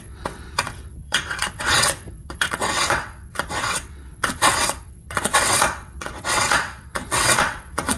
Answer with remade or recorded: remade